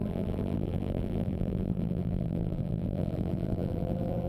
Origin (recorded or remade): remade